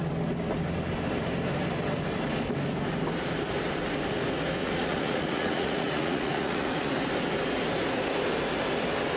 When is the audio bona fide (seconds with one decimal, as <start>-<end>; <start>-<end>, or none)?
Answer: 0.0-4.6; 6.9-9.2